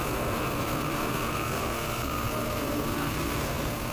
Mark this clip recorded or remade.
remade